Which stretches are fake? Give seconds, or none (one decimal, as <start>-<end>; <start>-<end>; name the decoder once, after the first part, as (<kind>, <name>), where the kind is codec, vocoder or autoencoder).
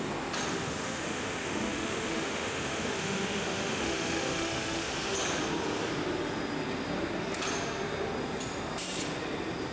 0.5-4.9 (autoencoder, DAC-VAE)